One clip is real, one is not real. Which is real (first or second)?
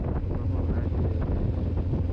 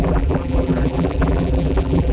first